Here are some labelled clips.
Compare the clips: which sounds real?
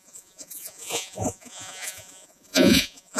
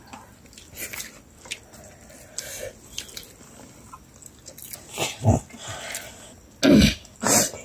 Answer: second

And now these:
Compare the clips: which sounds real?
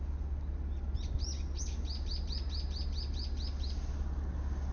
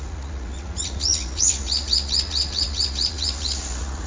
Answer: first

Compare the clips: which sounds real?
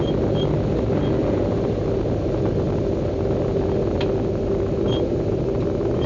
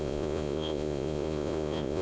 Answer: first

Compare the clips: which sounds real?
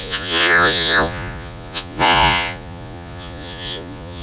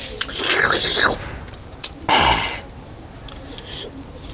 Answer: second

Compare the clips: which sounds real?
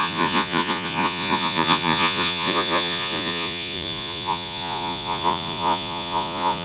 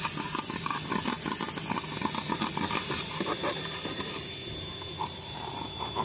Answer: second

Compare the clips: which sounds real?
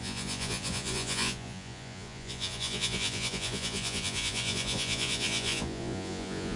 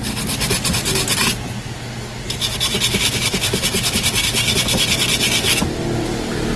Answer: second